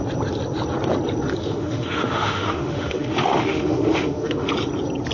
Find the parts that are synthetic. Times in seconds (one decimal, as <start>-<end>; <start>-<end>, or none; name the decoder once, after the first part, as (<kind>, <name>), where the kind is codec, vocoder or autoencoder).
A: 1.4-4.5 (autoencoder, DAC-VAE)